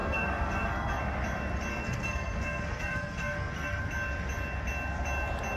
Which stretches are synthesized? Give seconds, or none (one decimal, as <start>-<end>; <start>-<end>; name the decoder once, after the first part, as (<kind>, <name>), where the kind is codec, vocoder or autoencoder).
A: 0.0-1.0 (codec, SNAC); 1.7-3.8